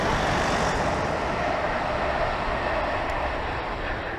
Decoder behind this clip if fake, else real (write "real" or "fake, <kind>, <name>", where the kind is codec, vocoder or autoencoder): real